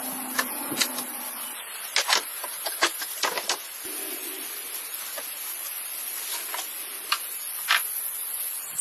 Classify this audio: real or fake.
real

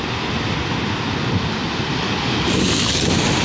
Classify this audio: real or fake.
real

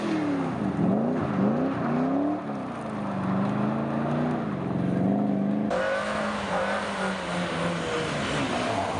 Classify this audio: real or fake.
real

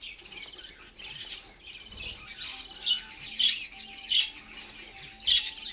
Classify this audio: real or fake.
real